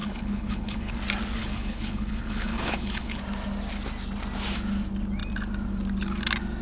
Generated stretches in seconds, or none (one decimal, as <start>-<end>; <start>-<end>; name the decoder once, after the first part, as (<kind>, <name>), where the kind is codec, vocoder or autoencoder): 0.0-0.9 (codec, HILCodec); 1.4-3.2